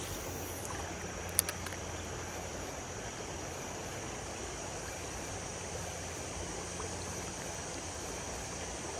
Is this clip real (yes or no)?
yes